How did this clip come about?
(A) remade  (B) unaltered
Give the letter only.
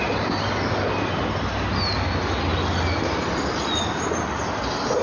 B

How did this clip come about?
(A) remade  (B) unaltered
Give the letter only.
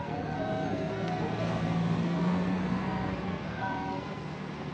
A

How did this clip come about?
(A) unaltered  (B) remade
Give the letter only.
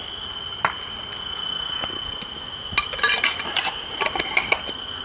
A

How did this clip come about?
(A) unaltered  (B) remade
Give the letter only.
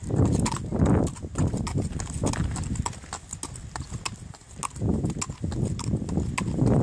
A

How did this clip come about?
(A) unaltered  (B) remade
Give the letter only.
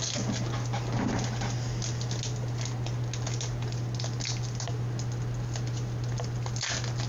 A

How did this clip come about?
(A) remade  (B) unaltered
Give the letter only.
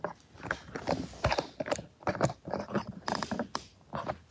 B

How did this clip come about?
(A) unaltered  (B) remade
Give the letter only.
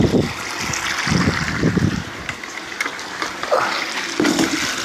A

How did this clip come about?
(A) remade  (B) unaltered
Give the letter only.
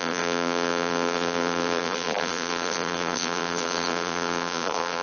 A